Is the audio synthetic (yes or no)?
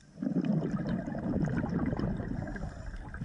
no